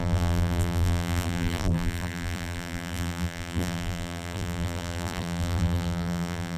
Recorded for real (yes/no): no